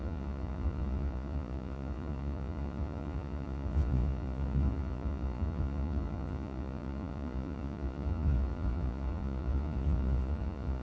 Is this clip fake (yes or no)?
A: yes